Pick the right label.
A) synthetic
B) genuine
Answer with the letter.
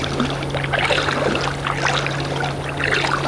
B